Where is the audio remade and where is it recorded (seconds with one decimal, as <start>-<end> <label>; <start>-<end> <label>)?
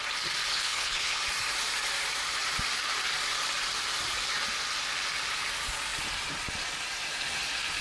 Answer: 0.0-0.5 recorded; 0.5-1.2 remade; 1.2-7.8 recorded